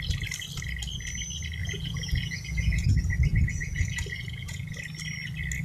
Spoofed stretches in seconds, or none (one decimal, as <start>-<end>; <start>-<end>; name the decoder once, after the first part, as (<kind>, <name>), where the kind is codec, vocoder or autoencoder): 1.6-2.9 (vocoder, Vocos); 3.3-4.7